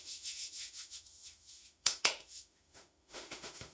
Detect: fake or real fake